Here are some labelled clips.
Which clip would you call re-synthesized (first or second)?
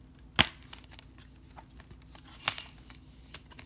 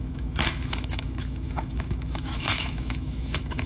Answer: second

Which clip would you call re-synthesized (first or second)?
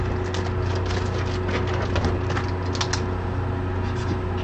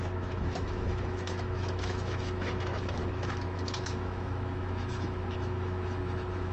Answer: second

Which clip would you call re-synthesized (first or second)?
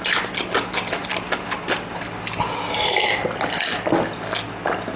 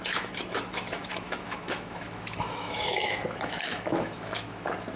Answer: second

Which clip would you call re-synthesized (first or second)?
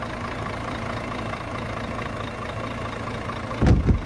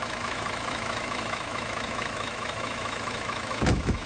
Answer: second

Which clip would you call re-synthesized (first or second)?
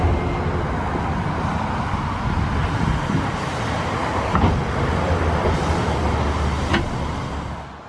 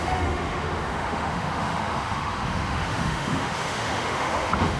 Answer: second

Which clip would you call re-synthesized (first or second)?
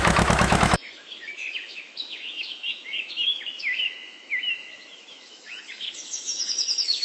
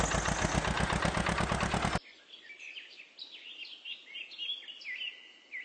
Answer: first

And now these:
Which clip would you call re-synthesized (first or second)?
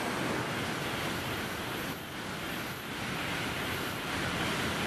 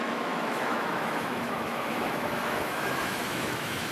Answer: second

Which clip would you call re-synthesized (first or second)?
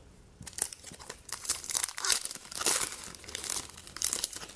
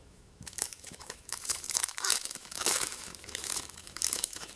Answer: second